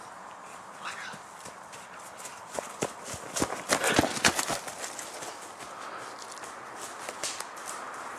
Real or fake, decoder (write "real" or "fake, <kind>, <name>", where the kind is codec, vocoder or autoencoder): real